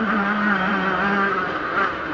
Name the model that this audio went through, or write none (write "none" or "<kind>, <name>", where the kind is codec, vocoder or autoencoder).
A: none